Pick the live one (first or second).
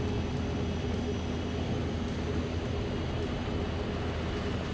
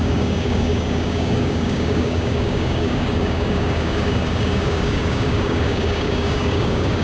first